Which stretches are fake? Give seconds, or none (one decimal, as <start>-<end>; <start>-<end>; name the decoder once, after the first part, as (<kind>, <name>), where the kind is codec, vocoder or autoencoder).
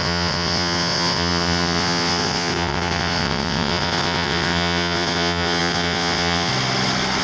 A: 0.0-6.5 (vocoder, WaveNeXt)